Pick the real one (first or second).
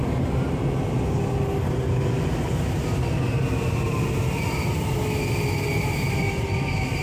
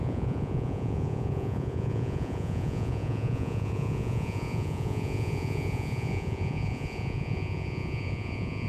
first